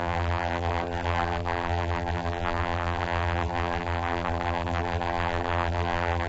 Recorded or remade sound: remade